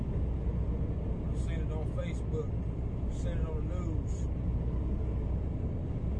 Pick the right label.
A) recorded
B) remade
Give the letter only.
A